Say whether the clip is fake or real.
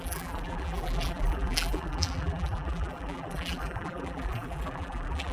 fake